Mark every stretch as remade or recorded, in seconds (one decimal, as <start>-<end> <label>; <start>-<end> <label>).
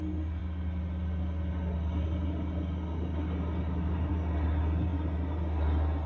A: 0.0-6.1 recorded